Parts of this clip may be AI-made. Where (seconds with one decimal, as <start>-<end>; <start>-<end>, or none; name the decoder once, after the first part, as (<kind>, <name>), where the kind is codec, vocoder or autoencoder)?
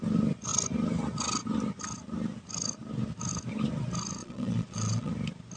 4.2-5.1 (vocoder, Vocos)